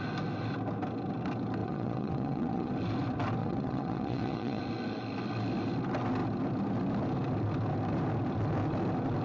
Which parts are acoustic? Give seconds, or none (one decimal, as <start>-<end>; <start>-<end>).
0.0-1.6; 2.7-3.4; 4.6-9.2